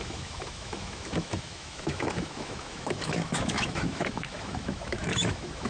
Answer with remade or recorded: remade